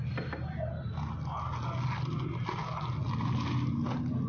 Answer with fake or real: real